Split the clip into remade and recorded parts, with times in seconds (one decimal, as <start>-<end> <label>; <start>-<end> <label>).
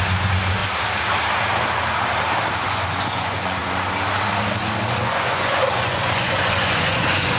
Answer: 0.0-0.6 remade; 0.6-2.6 recorded; 2.6-3.6 remade; 3.6-4.9 recorded; 4.9-7.4 remade